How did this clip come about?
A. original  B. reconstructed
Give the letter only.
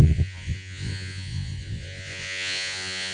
B